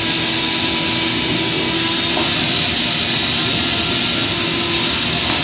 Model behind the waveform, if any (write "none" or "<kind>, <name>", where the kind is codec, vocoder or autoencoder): none